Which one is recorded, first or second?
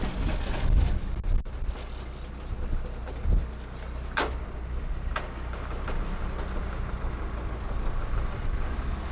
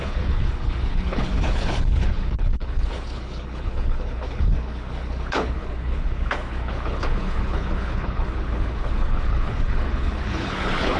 first